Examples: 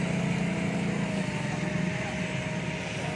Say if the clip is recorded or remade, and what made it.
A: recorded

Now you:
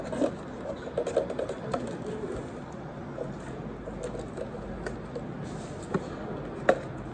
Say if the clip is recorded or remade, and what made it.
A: recorded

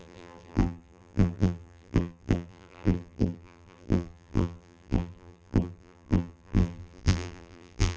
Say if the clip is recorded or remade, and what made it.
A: remade, vocoder, BigVGAN v2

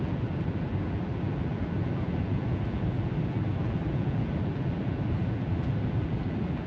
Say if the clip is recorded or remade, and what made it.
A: remade, vocoder, BigVGAN v2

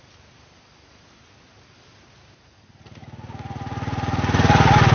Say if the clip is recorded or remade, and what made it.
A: recorded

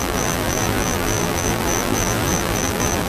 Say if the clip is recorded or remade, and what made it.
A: remade, vocoder, BigVGAN v2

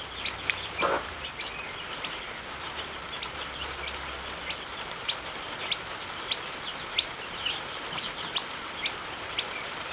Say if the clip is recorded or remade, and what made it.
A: remade, vocoder, BigVGAN v2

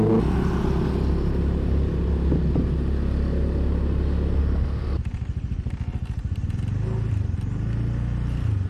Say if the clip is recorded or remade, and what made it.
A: recorded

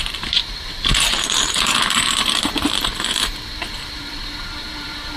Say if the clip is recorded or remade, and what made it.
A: remade, vocoder, BigVGAN v2